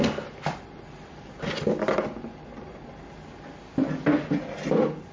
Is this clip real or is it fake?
real